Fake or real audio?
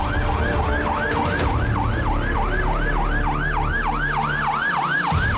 real